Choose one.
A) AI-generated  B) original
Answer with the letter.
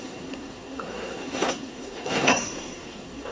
A